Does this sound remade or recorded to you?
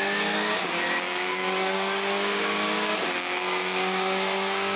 remade